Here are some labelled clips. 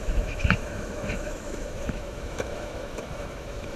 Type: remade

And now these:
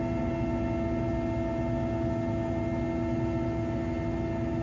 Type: recorded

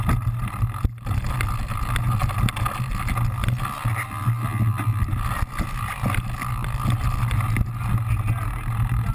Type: recorded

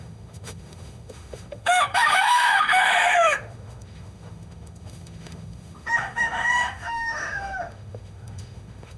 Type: remade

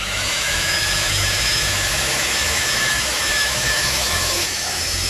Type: remade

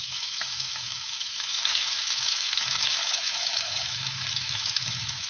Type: remade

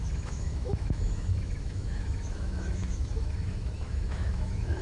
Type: remade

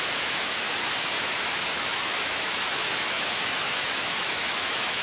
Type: remade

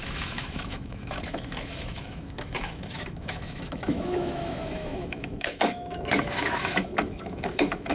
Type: remade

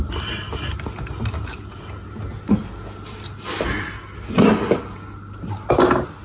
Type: recorded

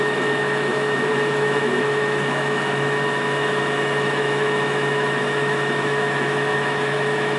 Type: remade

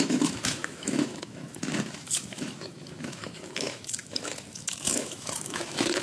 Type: remade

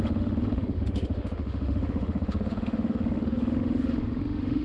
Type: remade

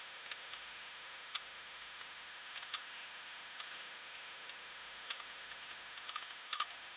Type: remade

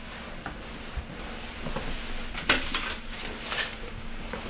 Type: recorded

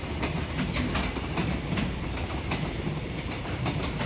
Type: recorded